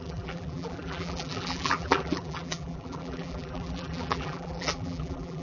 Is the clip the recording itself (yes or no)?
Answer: no